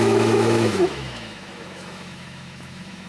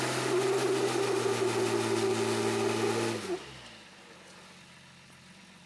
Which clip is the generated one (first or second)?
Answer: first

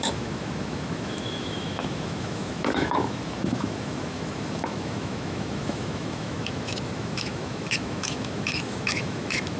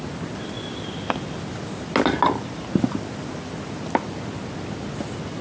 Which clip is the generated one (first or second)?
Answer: first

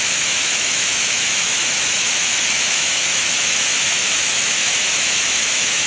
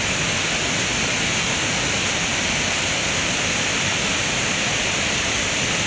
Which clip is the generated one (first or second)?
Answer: first